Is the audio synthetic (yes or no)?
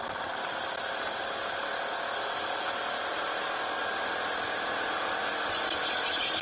no